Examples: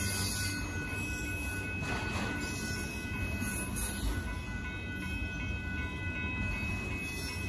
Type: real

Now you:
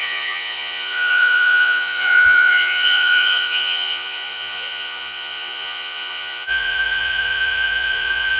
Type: fake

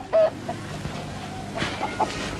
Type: real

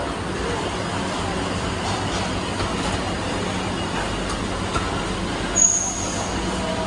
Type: real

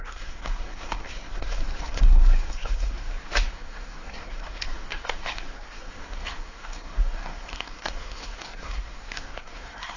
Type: fake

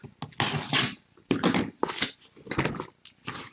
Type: real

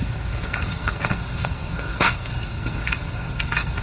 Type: fake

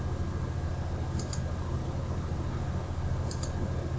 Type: real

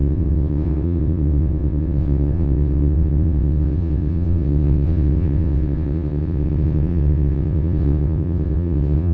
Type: fake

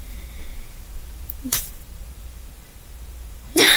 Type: fake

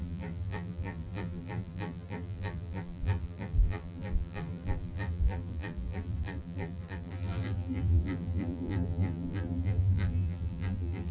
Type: fake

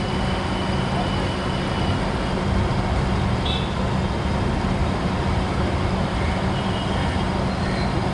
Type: real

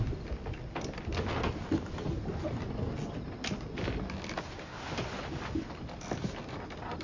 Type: real